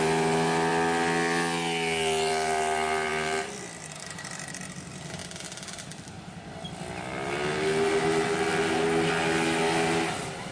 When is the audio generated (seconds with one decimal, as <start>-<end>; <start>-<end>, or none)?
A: none